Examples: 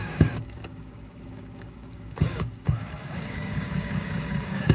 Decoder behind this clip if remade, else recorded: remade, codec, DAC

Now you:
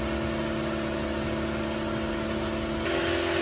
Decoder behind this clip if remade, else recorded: recorded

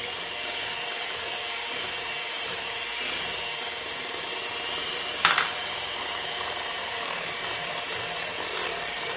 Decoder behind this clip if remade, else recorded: remade, vocoder, BigVGAN v2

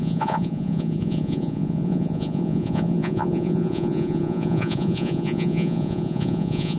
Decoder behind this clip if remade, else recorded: remade, vocoder, Vocos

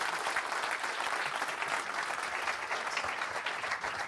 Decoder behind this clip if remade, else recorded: recorded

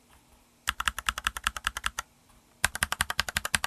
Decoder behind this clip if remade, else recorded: remade, vocoder, BigVGAN v2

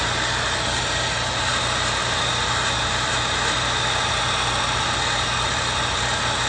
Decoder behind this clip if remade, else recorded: recorded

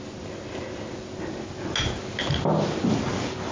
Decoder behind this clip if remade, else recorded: recorded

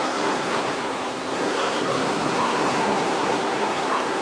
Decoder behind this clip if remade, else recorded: remade, codec, SNAC